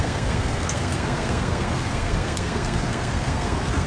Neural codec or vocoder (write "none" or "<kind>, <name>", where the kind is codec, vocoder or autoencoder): codec, SNAC